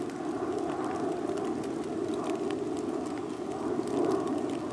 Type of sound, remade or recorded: recorded